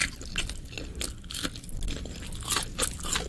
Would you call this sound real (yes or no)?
yes